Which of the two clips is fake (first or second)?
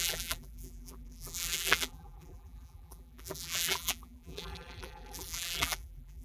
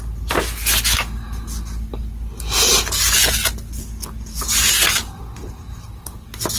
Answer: first